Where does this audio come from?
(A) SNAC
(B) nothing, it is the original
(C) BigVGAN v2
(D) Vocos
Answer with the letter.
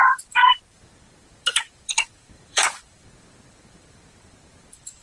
C